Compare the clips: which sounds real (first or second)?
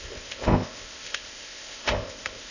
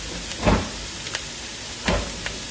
second